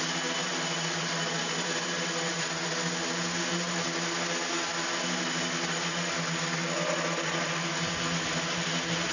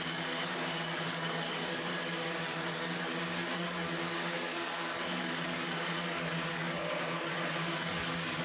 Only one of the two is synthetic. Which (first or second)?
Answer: second